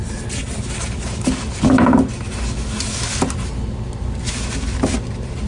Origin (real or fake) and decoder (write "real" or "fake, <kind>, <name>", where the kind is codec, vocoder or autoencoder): real